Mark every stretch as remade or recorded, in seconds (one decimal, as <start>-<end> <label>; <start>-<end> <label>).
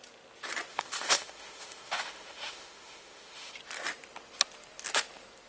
0.0-0.7 recorded; 0.7-3.5 remade; 3.5-5.5 recorded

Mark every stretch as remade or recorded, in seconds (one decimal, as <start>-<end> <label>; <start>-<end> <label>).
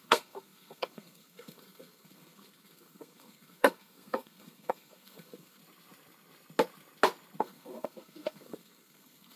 0.0-5.6 remade; 5.6-7.4 recorded; 7.4-9.4 remade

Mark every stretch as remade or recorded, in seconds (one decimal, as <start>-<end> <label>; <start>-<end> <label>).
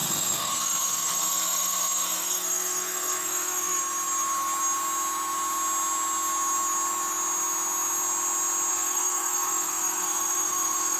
0.0-3.8 remade; 3.8-8.7 recorded; 8.7-11.0 remade